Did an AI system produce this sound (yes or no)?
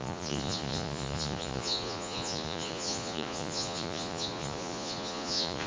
yes